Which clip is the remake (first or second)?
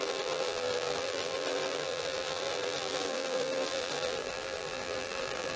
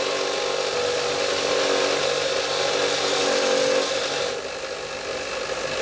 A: first